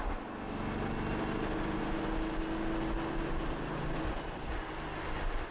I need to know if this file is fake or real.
real